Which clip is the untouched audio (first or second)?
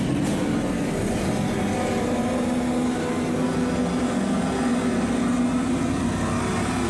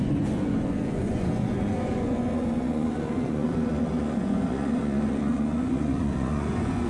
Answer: first